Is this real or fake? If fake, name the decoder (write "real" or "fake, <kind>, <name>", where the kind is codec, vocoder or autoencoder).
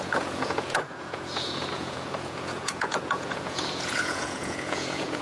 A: fake, vocoder, Vocos